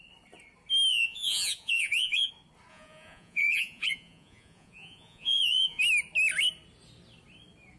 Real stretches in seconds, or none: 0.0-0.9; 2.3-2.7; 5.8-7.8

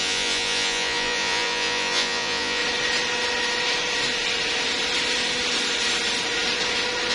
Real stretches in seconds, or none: 2.6-7.1

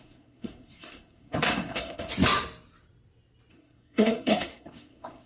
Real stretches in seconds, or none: 2.1-3.5

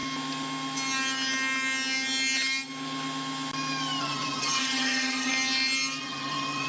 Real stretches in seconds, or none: 0.0-4.0; 5.3-6.0

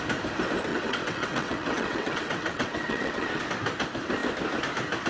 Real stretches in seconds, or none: 0.0-0.7; 3.4-5.1

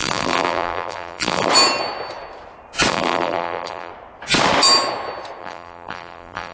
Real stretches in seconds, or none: 1.5-2.9; 3.9-5.4

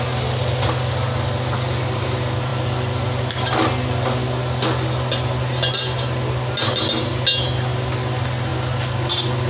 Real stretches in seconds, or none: 0.0-9.5